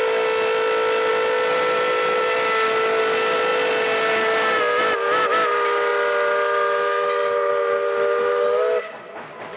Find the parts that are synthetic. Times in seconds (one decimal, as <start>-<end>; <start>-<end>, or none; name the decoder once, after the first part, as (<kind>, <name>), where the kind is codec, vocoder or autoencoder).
none